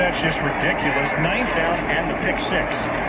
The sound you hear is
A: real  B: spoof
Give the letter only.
A